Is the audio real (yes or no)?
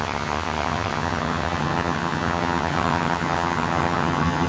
no